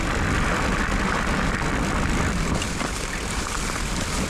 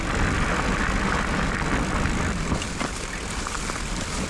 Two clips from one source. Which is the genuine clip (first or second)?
second